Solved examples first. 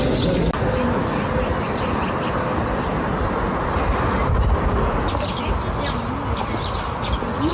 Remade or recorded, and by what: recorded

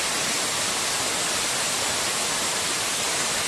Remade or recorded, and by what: recorded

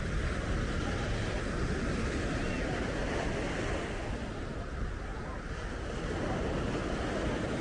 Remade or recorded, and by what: recorded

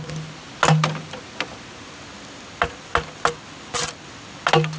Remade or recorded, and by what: recorded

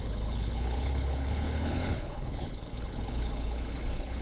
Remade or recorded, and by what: remade, codec, HILCodec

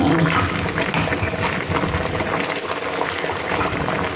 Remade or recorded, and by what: recorded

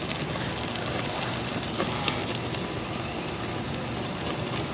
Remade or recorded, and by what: recorded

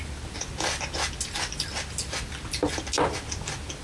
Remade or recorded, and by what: recorded